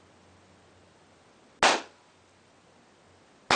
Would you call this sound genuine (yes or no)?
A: yes